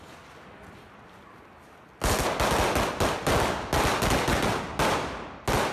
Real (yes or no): yes